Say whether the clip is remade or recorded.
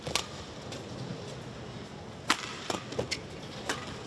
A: recorded